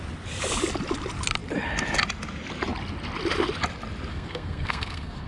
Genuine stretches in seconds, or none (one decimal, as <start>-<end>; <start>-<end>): 0.0-4.1